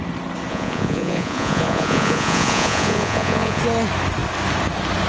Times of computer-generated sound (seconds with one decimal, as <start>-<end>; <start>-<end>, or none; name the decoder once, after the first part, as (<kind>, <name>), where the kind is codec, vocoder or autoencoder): 0.5-3.6 (vocoder, Vocos)